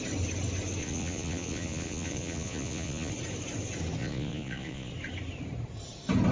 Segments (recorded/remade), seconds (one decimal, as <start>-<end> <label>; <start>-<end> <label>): 0.0-0.8 recorded; 0.8-3.1 remade; 3.1-4.0 recorded; 4.0-4.9 remade; 4.9-6.3 recorded